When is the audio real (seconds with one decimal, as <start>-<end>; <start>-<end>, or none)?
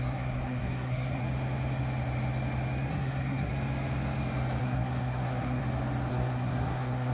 1.2-2.9; 3.5-4.6; 5.6-6.1